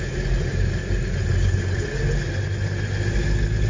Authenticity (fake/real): real